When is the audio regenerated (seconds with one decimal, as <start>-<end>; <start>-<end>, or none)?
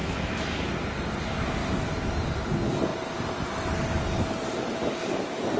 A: 0.0-0.7